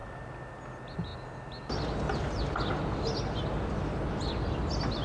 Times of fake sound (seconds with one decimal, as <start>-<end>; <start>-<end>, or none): none